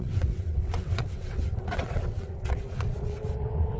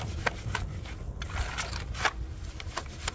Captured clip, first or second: second